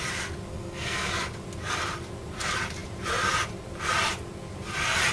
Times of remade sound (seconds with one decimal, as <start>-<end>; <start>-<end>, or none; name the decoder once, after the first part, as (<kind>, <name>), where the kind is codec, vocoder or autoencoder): 0.5-1.1 (codec, SNAC)